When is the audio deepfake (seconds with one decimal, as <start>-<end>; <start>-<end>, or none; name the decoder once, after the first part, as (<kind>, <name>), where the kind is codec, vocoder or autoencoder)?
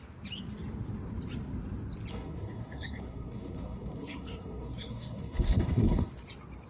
2.1-6.1 (codec, SNAC)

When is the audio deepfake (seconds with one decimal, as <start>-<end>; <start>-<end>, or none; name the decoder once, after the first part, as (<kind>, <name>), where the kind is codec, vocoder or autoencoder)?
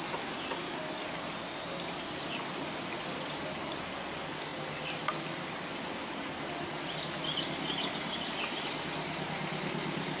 none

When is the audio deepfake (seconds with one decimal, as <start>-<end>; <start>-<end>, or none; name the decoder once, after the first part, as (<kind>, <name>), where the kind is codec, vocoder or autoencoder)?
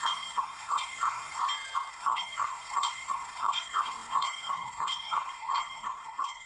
0.0-1.4 (codec, SNAC); 1.9-6.5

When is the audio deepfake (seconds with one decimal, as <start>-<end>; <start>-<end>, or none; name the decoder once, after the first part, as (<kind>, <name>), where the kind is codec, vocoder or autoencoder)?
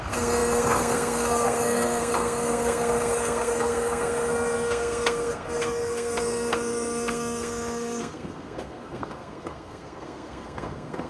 0.0-11.1 (codec, SNAC)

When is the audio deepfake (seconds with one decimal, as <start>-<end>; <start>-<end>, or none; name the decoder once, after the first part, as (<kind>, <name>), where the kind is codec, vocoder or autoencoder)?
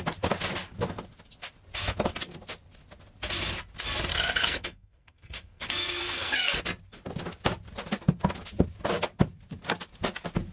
4.1-6.6 (codec, SNAC)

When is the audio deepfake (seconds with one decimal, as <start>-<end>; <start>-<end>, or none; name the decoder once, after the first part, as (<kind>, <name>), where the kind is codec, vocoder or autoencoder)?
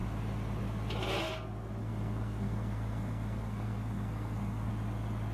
1.8-4.7 (codec, SNAC)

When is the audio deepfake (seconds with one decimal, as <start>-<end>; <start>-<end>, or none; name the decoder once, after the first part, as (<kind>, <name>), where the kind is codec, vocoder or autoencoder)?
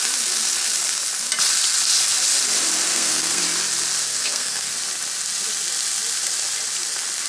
2.9-3.4 (codec, SNAC); 4.1-4.7